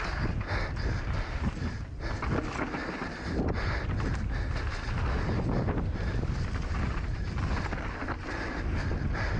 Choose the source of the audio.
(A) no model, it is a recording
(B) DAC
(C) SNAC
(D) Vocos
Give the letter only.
A